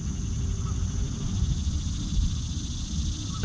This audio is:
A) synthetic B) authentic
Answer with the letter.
B